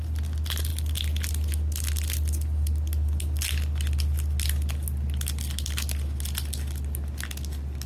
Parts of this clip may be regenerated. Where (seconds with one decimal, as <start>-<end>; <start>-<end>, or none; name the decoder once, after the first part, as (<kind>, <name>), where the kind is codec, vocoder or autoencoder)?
none